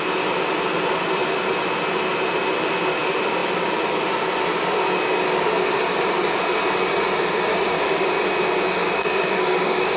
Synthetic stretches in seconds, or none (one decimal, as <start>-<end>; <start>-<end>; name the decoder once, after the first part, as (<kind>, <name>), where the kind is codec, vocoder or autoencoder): 7.5-8.1 (codec, DAC); 8.8-10.0

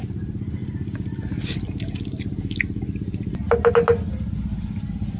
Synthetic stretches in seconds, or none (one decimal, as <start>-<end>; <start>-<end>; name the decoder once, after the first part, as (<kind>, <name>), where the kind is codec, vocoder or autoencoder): none

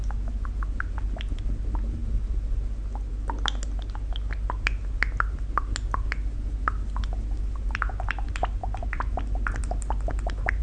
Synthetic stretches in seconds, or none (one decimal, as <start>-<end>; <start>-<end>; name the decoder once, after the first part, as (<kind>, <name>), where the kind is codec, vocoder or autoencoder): none

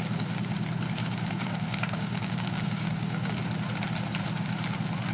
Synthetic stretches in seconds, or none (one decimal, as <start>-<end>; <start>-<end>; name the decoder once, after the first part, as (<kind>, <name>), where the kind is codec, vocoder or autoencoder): 1.0-3.4 (codec, DAC)

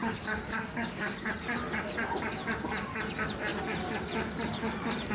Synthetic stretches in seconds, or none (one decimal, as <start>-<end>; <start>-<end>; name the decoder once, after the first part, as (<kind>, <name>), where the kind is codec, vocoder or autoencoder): 0.0-1.3 (codec, DAC)